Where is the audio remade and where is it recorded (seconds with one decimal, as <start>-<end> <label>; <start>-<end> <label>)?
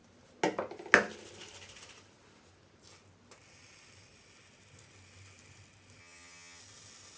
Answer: 0.0-6.0 recorded; 6.0-6.6 remade; 6.6-7.2 recorded